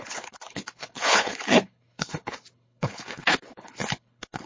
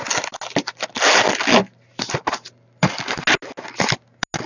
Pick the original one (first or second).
second